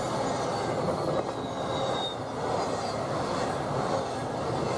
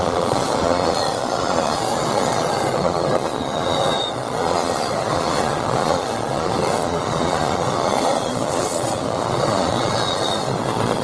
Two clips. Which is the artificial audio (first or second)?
second